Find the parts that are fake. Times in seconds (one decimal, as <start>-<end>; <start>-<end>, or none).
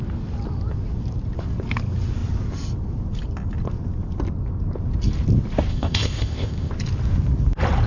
5.7-6.7